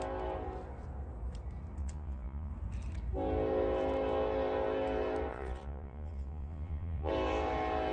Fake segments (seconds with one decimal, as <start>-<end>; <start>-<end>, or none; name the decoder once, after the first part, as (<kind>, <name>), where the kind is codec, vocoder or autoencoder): 1.8-2.5 (vocoder, Vocos); 5.3-7.1